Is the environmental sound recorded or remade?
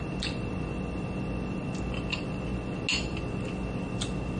recorded